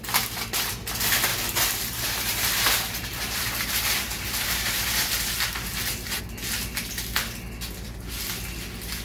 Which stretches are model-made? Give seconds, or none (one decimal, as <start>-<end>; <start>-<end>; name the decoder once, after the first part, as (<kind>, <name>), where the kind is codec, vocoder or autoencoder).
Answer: 1.3-6.2 (vocoder, BigVGAN v2)